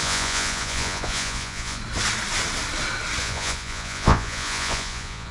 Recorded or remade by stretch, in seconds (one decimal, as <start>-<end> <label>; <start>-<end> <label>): 0.0-1.8 remade; 1.8-3.2 recorded; 3.2-5.3 remade